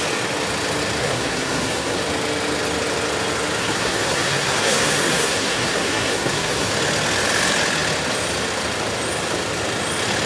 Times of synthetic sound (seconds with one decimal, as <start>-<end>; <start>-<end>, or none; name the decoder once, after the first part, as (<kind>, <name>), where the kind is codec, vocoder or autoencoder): 1.0-2.0 (codec, SNAC); 3.6-6.7